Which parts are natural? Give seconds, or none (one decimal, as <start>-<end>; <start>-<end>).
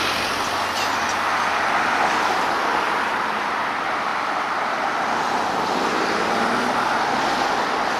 0.0-8.0